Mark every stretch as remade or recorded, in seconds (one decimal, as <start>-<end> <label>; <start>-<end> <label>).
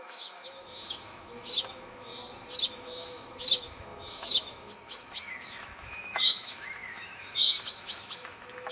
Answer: 0.0-2.1 remade; 2.1-2.7 recorded; 2.7-8.7 remade